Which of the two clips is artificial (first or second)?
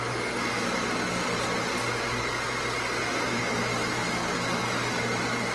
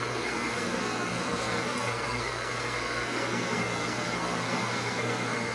second